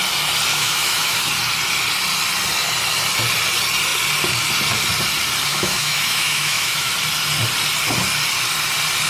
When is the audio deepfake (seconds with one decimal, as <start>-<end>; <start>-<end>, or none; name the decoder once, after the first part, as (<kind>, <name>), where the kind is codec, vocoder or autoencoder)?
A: 0.5-1.2 (autoencoder, DAC-VAE); 5.5-6.9